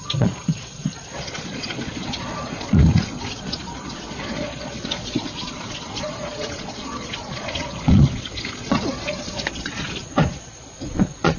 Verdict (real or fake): fake